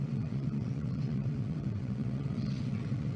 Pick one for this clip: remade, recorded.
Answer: remade